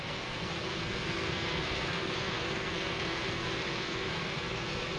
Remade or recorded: remade